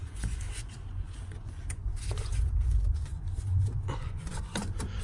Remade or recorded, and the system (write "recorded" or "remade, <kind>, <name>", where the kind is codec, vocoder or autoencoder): remade, vocoder, Vocos